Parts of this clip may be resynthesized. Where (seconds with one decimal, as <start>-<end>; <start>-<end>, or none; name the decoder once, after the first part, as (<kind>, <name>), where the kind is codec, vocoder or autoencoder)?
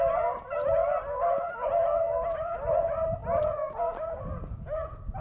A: none